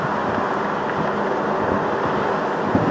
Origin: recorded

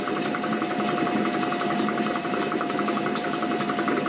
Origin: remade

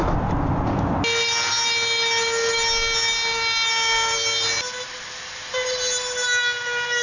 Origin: recorded